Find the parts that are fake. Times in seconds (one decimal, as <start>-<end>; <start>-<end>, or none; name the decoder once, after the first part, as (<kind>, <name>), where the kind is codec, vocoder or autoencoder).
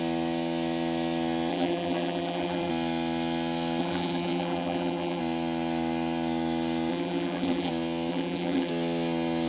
1.5-2.7 (vocoder, BigVGAN v2); 3.8-5.2; 6.9-7.7; 8.1-8.7